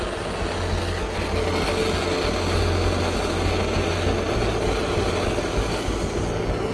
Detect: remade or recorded recorded